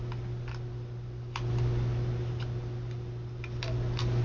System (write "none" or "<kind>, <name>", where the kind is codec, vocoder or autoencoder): none